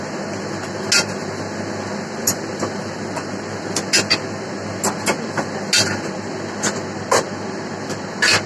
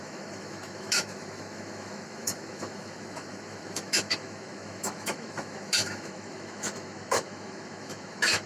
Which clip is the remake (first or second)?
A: second